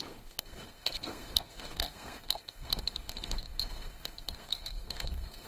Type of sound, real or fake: fake